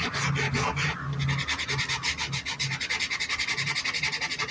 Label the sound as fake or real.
real